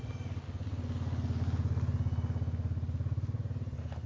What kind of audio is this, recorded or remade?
recorded